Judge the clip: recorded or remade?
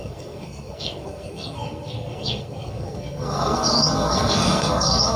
remade